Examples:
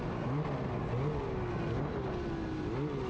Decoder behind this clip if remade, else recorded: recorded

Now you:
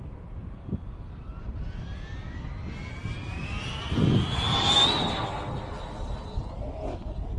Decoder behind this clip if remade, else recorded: recorded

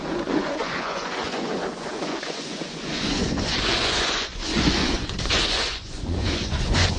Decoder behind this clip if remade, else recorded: remade, vocoder, Vocos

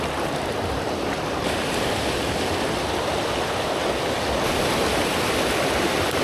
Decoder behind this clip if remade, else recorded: recorded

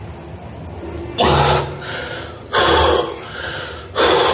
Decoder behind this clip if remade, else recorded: recorded